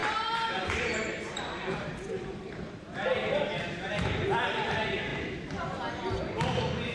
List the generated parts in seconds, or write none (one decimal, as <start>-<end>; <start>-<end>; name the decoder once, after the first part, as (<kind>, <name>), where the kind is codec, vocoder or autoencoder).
0.0-3.3 (vocoder, BigVGAN v2)